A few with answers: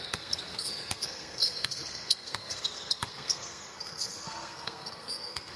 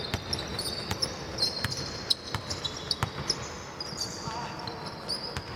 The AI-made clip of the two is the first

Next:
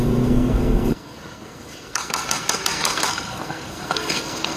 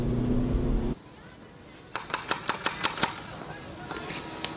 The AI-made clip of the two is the first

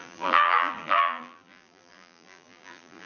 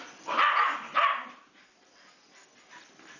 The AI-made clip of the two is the first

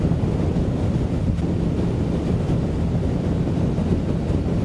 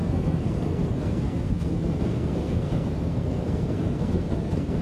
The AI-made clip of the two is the second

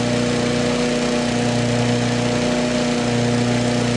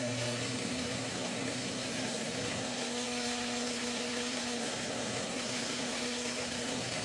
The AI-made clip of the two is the second